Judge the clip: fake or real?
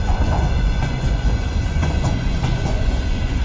fake